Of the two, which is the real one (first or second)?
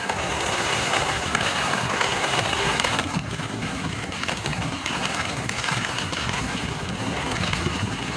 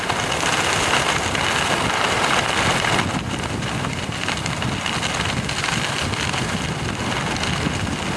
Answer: second